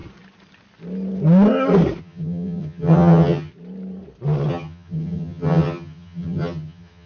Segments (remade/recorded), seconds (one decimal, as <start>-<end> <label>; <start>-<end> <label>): 0.0-2.0 recorded; 2.0-3.5 remade; 3.5-4.5 recorded; 4.5-7.1 remade